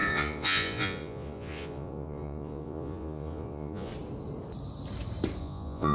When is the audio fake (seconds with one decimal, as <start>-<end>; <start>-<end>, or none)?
0.0-3.9; 5.4-5.9